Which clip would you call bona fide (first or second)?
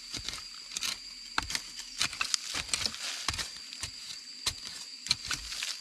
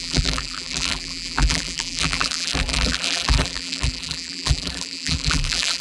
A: first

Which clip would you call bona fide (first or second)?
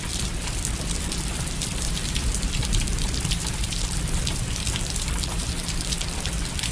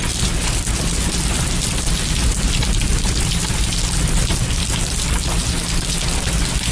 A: second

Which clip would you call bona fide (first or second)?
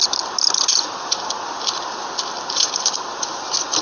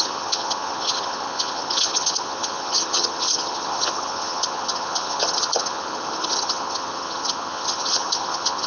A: first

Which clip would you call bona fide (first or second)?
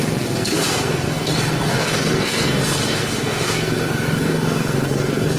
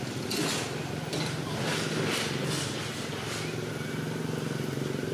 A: second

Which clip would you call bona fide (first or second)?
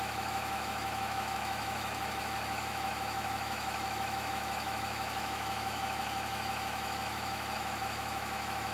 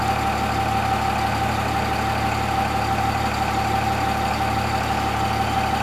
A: second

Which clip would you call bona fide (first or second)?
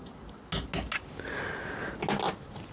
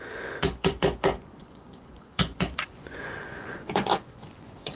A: first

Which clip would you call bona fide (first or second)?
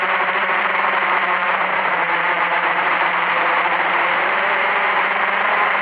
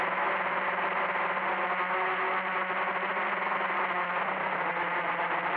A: second